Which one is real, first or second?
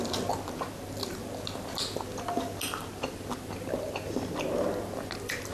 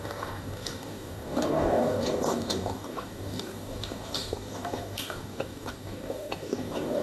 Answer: first